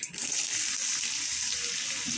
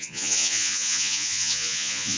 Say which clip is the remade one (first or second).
second